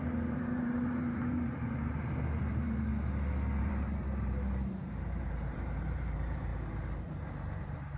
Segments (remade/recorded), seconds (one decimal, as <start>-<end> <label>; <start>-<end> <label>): 0.0-2.9 remade; 2.9-3.6 recorded; 3.6-6.5 remade; 6.5-7.6 recorded; 7.6-8.0 remade